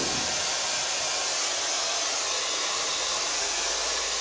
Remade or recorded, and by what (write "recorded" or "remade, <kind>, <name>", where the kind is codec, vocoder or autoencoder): recorded